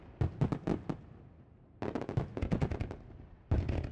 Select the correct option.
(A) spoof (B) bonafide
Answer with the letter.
B